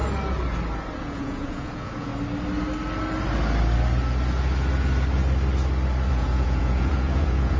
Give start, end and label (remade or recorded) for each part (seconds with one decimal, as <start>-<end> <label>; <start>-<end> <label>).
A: 0.0-1.0 recorded; 1.0-2.1 remade; 2.1-6.1 recorded; 6.1-7.6 remade